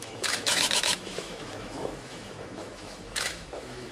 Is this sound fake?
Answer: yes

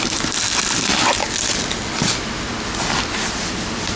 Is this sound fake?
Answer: no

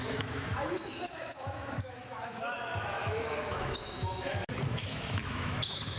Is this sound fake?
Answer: yes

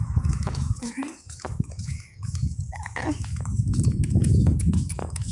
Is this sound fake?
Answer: yes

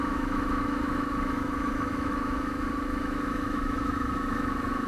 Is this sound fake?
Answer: yes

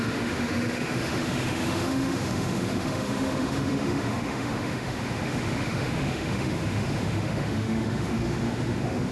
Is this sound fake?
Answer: yes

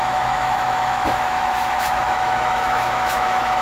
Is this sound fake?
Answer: yes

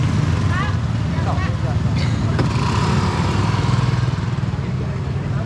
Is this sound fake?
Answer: no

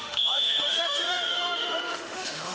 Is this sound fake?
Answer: yes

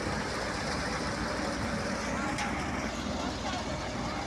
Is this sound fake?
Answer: no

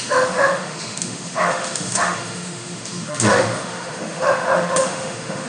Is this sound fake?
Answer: yes